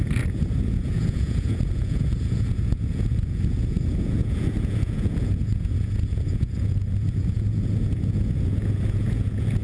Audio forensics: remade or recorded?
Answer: remade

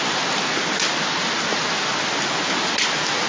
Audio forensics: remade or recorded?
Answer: recorded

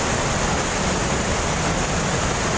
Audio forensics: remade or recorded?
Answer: recorded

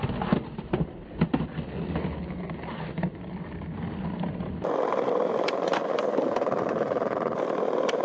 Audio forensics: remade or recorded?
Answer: recorded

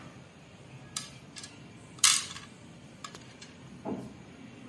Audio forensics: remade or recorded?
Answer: remade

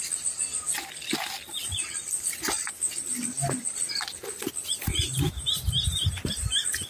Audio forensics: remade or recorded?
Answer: recorded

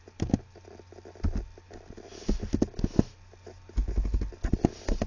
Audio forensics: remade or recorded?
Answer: recorded